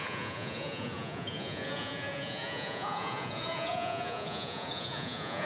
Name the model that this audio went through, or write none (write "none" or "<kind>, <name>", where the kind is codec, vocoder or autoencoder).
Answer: vocoder, Vocos